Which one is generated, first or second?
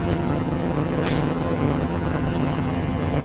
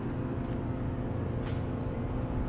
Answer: first